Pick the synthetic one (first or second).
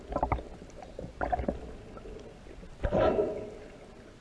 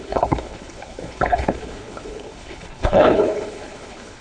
second